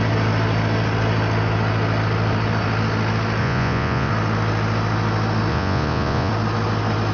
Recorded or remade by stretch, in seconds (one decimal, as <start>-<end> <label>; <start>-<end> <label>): 0.0-3.4 recorded; 3.4-4.1 remade; 4.1-5.5 recorded; 5.5-6.3 remade; 6.3-7.1 recorded